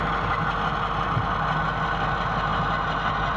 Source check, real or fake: real